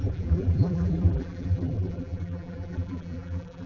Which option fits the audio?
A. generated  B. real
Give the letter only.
A